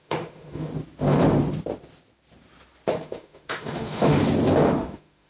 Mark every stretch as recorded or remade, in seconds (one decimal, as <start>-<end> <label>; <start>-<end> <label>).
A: 0.0-0.7 remade; 0.7-2.9 recorded; 2.9-4.2 remade; 4.2-4.7 recorded; 4.7-5.3 remade